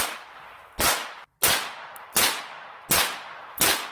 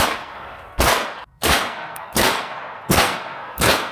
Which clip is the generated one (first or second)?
second